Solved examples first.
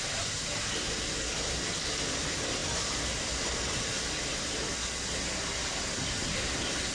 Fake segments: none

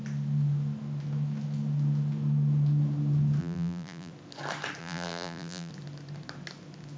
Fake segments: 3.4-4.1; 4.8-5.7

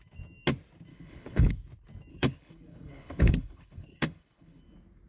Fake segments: 0.9-1.5; 2.1-4.6